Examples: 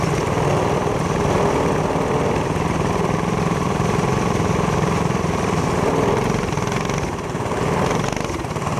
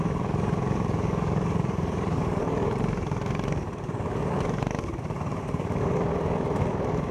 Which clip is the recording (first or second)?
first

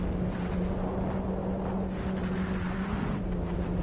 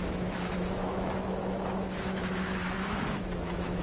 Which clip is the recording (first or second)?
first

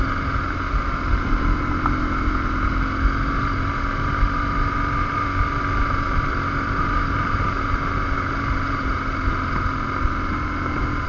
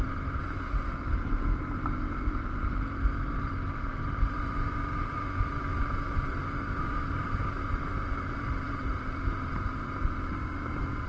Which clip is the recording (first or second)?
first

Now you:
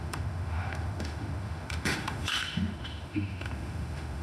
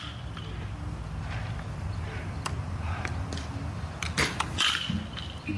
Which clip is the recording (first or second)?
second